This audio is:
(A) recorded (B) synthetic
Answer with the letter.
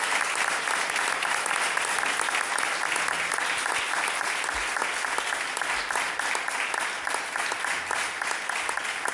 A